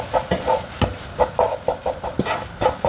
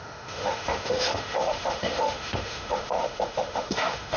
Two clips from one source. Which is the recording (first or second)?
first